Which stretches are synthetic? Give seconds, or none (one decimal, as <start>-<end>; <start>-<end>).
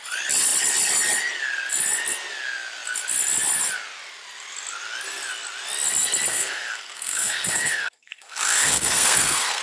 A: 6.3-9.6